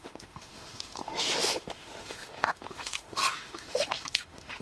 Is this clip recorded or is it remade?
remade